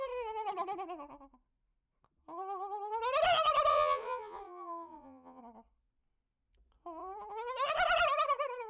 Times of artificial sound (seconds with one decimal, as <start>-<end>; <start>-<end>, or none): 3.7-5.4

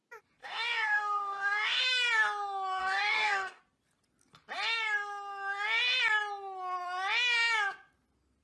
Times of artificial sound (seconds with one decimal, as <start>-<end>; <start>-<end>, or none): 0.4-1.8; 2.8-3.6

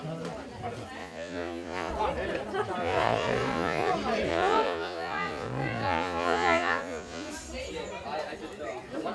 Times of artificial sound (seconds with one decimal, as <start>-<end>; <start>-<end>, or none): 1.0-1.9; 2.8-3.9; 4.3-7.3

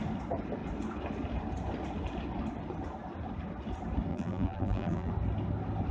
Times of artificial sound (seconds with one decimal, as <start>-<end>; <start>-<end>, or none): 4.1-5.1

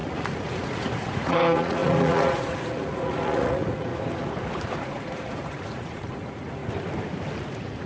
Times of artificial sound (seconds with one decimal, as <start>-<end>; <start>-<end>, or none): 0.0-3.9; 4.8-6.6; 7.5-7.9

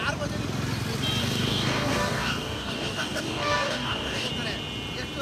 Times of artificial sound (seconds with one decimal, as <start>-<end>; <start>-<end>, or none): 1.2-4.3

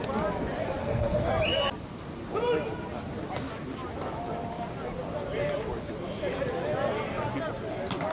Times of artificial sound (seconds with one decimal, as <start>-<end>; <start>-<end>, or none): 0.8-1.3